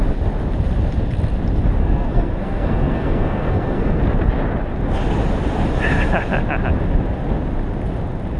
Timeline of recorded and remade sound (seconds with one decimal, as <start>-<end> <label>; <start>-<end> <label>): 0.0-1.8 recorded; 1.8-4.0 remade; 4.0-8.4 recorded